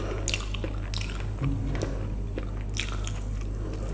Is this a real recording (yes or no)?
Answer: yes